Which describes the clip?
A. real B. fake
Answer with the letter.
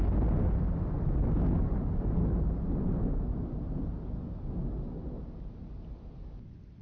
A